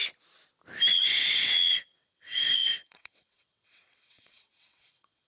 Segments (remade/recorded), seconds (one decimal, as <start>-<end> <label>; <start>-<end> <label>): 0.0-0.9 recorded; 0.9-5.3 remade